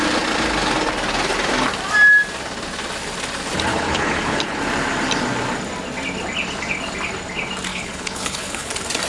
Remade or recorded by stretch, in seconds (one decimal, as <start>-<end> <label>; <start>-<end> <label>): 0.0-3.7 recorded; 3.7-4.6 remade; 4.6-7.7 recorded; 7.7-8.7 remade; 8.7-9.1 recorded